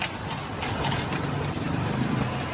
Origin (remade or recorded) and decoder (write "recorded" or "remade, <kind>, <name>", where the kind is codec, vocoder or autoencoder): recorded